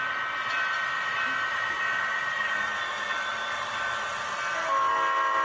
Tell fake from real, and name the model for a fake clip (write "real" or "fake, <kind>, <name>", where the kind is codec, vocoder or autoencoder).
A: real